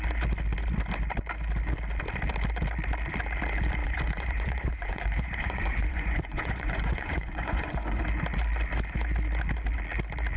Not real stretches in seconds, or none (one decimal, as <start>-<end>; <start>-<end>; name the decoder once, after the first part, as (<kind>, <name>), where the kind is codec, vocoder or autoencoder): 3.8-8.0 (vocoder, Vocos)